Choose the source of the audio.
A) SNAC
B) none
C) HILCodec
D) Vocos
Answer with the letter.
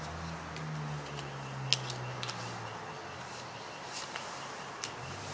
B